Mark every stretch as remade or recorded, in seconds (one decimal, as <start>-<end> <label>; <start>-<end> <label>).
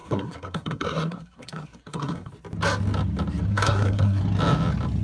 0.0-2.3 remade; 2.3-3.5 recorded; 3.5-4.2 remade; 4.2-5.0 recorded